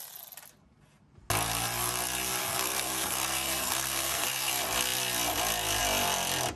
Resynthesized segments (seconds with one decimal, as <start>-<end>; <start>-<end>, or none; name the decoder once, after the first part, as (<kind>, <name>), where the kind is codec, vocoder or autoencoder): 2.4-4.5 (codec, SNAC)